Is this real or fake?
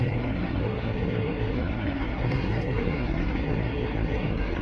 fake